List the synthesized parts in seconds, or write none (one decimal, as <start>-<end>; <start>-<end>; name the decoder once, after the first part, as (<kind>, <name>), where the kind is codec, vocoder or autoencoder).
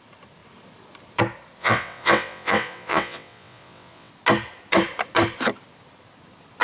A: 1.6-4.1 (vocoder, WaveNeXt)